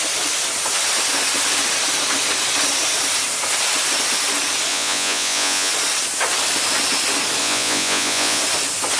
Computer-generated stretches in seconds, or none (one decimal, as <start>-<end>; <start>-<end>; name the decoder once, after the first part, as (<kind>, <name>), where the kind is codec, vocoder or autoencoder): 4.7-5.7 (vocoder, Vocos); 7.4-8.4